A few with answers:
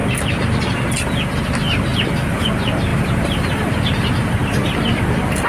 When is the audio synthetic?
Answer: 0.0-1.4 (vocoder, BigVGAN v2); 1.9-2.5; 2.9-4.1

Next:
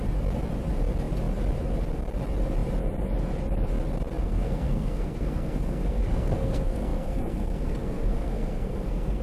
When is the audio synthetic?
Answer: 4.2-9.2 (codec, SNAC)

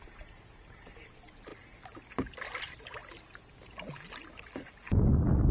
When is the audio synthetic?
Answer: 0.0-1.5 (vocoder, BigVGAN v2); 2.6-3.0

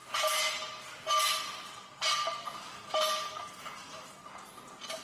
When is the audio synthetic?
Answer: 2.7-4.2 (autoencoder, DAC-VAE)

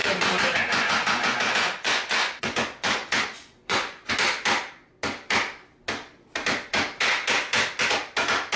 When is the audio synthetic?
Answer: 0.0-4.1 (vocoder, Vocos)

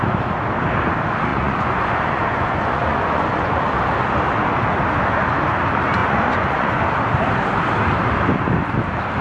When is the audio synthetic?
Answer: 1.3-3.7 (vocoder, Vocos); 6.0-6.8

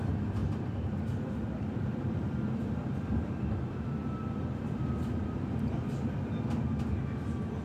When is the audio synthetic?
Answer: 0.4-2.3 (vocoder, BigVGAN v2); 4.0-5.7

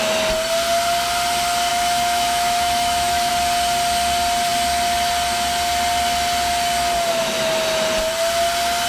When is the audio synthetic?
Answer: 1.7-3.3 (autoencoder, DAC-VAE)